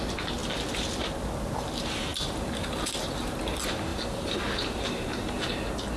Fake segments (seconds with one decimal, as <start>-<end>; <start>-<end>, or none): 2.1-2.9; 3.9-5.5

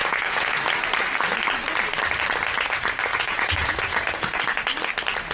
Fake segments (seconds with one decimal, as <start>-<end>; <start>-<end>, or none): 0.0-0.6; 3.1-4.4

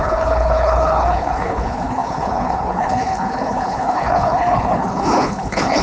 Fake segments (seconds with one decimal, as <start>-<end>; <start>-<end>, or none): 0.0-5.8

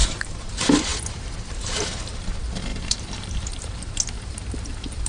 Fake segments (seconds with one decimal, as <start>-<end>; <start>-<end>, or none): 0.0-0.5; 2.7-3.8